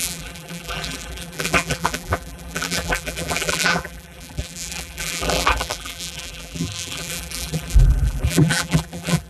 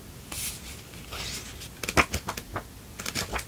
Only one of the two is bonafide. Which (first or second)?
second